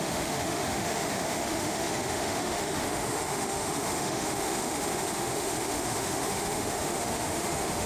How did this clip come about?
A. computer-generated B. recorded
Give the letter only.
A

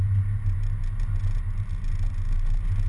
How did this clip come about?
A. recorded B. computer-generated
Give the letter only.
A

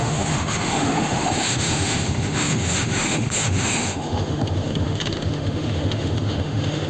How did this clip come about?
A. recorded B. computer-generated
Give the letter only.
B